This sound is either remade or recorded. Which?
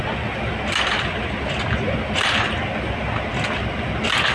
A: recorded